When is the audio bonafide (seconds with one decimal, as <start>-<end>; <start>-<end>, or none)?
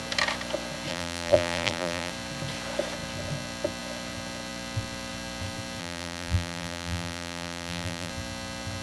0.0-0.9; 2.1-5.8; 8.1-8.8